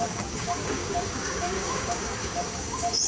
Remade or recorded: remade